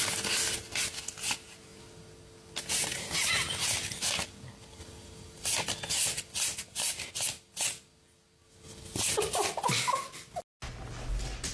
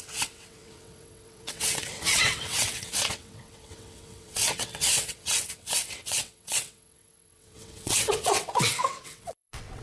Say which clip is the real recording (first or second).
first